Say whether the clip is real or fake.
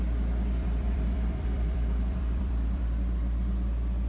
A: fake